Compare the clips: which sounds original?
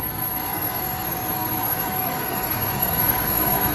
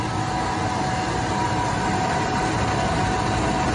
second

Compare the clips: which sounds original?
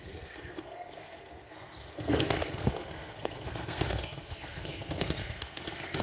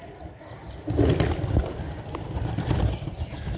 second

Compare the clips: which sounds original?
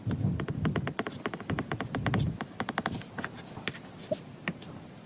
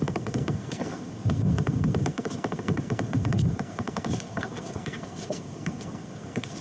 first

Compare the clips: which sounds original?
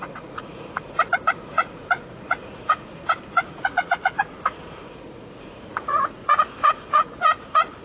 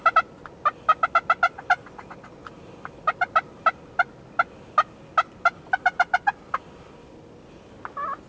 second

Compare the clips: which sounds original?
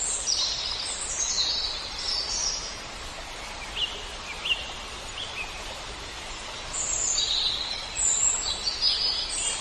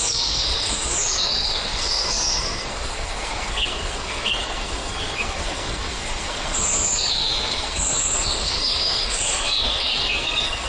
first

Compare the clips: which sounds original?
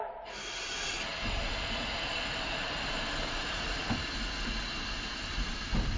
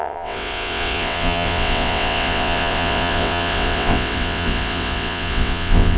first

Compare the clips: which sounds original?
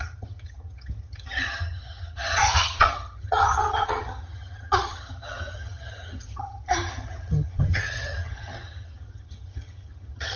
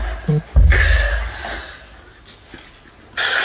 second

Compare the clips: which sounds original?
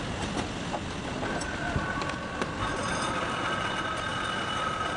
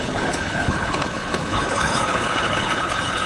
first